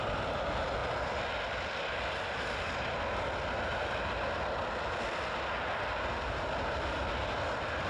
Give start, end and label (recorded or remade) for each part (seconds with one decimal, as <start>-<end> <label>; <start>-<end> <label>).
0.0-7.9 recorded